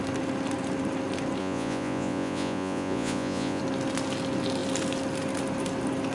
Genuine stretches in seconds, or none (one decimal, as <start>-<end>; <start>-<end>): 0.0-1.4; 3.6-6.1